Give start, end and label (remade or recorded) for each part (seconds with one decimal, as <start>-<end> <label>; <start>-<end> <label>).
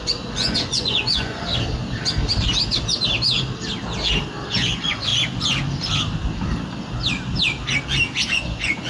0.0-1.5 remade; 1.5-4.5 recorded; 4.5-5.1 remade; 5.1-8.3 recorded; 8.3-8.9 remade